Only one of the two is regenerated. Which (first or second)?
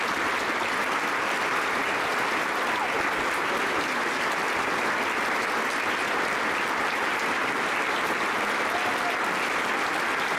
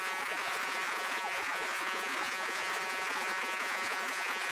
second